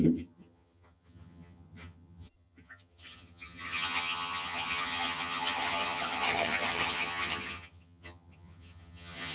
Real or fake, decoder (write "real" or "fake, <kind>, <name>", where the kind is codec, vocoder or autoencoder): fake, vocoder, HiFi-GAN